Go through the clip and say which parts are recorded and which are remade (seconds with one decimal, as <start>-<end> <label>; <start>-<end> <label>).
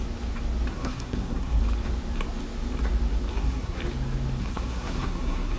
0.0-0.7 recorded; 0.7-1.6 remade; 1.6-3.3 recorded; 3.3-3.8 remade; 3.8-4.4 recorded; 4.4-5.6 remade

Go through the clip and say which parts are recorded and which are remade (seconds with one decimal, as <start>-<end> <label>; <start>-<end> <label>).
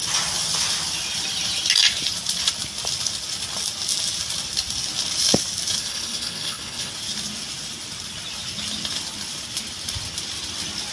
0.0-5.8 recorded; 5.8-6.9 remade; 6.9-10.9 recorded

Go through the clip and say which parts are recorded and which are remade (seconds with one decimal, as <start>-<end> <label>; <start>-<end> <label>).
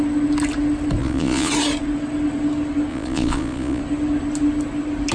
0.0-1.0 recorded; 1.0-1.5 remade; 1.5-2.9 recorded; 2.9-3.8 remade; 3.8-5.1 recorded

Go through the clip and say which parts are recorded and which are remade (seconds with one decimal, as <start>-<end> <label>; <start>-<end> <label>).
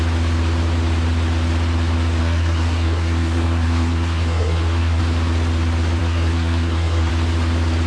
0.0-2.2 recorded; 2.2-5.0 remade; 5.0-6.0 recorded; 6.0-7.1 remade; 7.1-7.9 recorded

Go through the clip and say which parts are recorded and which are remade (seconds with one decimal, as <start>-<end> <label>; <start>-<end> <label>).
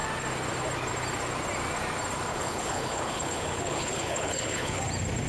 0.0-2.3 recorded; 2.3-4.8 remade; 4.8-5.3 recorded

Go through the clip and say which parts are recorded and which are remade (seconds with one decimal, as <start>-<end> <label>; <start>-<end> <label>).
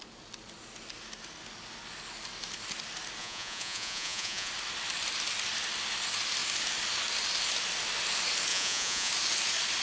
0.0-3.2 recorded; 3.2-4.5 remade; 4.5-8.5 recorded; 8.5-9.1 remade; 9.1-9.8 recorded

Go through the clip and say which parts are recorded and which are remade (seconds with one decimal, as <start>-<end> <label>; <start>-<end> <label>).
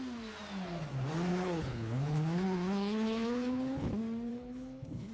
0.0-1.3 recorded; 1.3-3.9 remade; 3.9-4.3 recorded; 4.3-5.1 remade